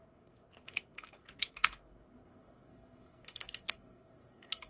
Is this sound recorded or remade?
remade